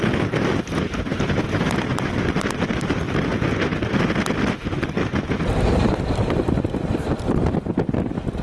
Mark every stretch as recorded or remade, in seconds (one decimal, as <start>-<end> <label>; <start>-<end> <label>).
0.0-8.4 recorded